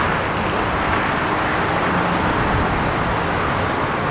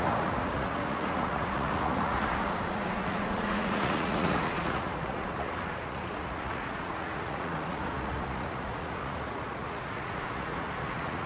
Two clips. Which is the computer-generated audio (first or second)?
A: second